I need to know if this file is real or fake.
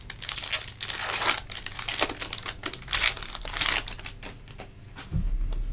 real